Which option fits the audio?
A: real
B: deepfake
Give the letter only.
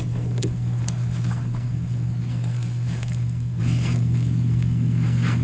B